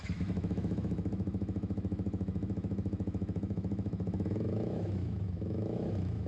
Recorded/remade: remade